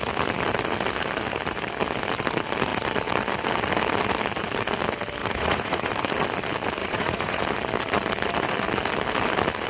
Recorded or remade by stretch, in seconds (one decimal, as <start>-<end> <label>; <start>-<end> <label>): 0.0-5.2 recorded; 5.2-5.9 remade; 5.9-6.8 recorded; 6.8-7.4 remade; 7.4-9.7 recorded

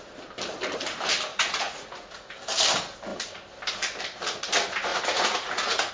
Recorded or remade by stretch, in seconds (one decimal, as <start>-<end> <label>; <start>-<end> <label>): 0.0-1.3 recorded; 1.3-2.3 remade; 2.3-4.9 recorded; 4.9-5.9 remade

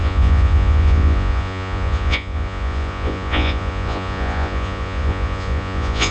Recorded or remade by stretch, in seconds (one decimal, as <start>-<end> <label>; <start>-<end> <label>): 0.0-6.1 remade